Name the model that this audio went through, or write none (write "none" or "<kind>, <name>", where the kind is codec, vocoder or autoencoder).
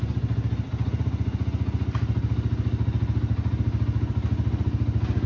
none